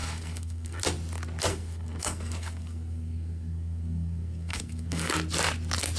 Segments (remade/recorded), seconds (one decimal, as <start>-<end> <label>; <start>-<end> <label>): 0.0-0.8 remade; 0.8-1.5 recorded; 1.5-5.1 remade; 5.1-6.0 recorded